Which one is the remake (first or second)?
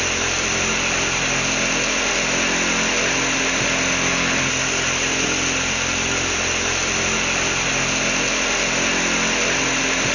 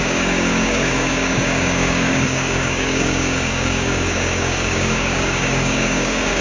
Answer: second